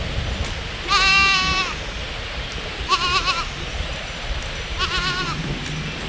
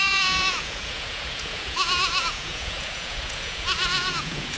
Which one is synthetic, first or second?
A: second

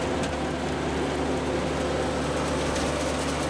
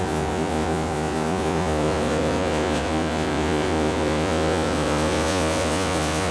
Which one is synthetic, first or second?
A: second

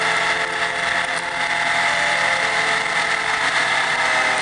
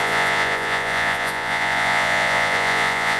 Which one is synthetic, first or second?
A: second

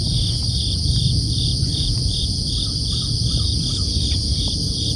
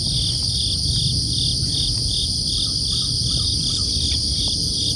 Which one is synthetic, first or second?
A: first